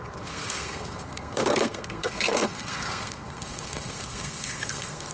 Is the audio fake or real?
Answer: fake